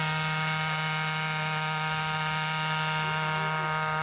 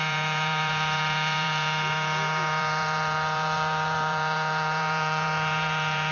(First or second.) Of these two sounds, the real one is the first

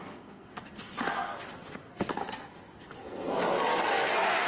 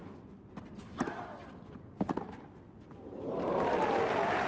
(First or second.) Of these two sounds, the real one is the second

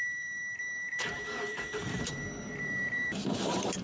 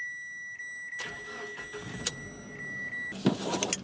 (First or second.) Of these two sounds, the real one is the second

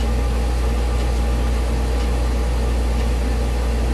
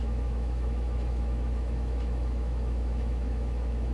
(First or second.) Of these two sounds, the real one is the first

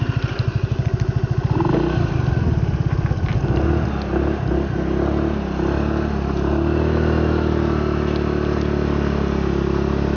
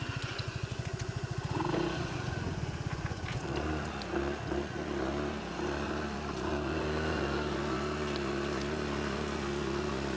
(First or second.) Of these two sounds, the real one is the first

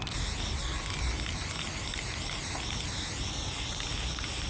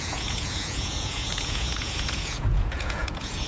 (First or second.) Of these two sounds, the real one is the first